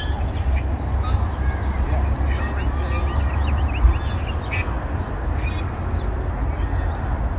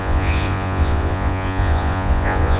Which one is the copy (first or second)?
second